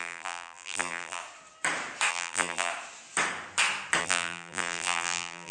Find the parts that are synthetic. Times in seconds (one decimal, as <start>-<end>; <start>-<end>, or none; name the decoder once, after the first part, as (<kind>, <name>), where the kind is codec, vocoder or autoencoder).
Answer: 0.0-1.2 (vocoder, BigVGAN v2); 2.1-2.7; 4.0-5.5